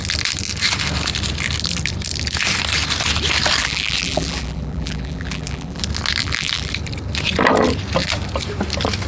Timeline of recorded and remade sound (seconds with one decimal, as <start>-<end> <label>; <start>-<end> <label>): 0.0-3.6 recorded; 3.6-5.8 remade; 5.8-6.2 recorded; 6.2-6.7 remade; 6.7-9.1 recorded